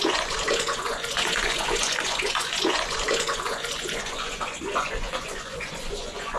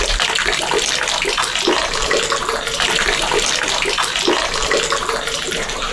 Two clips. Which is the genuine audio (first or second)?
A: second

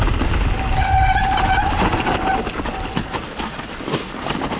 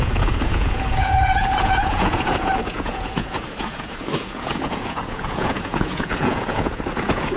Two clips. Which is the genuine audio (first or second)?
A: first